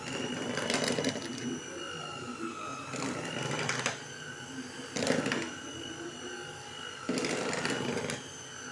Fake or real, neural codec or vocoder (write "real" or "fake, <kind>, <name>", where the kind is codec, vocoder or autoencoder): real